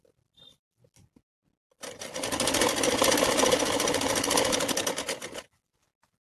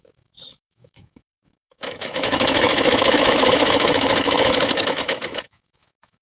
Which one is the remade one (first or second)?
second